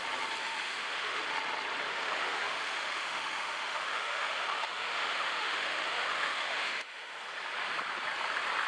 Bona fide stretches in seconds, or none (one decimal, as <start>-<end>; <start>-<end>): 0.0-0.4; 1.2-1.9; 7.1-8.7